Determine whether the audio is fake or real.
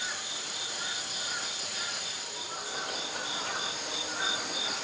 real